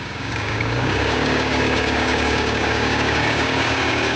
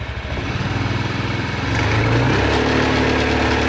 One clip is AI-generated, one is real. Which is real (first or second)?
second